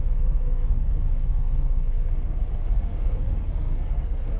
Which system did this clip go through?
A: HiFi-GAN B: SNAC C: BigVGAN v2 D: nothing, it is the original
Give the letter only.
B